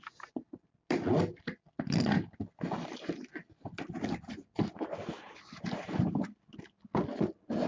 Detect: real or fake real